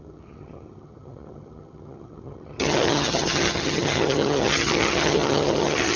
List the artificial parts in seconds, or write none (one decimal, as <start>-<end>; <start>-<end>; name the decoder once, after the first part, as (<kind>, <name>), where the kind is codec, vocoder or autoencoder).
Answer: 0.0-6.0 (vocoder, HiFi-GAN)